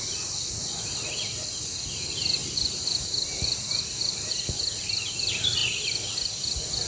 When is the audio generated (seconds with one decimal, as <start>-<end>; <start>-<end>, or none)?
2.4-4.5